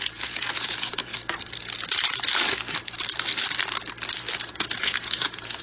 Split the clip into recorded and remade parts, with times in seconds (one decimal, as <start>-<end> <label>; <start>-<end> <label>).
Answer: 0.0-1.1 remade; 1.1-4.5 recorded; 4.5-5.6 remade

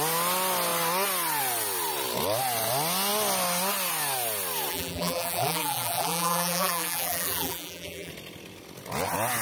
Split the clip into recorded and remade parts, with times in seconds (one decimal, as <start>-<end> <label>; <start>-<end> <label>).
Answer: 0.0-4.7 recorded; 4.7-8.1 remade; 8.1-9.4 recorded

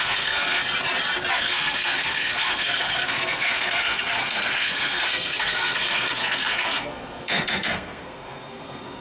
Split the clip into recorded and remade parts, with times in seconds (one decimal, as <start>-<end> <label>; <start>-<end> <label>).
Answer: 0.0-0.6 remade; 0.6-1.3 recorded; 1.3-9.0 remade

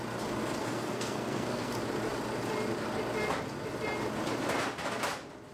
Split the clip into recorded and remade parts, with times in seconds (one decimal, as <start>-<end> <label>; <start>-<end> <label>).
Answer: 0.0-0.6 recorded; 0.6-1.7 remade; 1.7-5.5 recorded

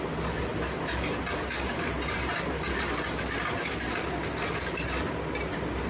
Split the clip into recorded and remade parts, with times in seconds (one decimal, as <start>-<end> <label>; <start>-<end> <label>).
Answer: 0.0-5.9 recorded